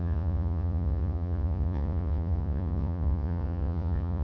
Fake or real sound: fake